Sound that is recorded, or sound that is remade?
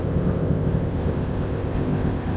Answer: remade